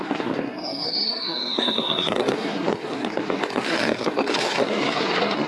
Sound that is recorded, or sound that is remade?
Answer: remade